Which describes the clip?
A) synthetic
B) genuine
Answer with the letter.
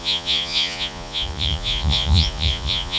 A